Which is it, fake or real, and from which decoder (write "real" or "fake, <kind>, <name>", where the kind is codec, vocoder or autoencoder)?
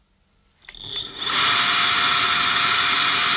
real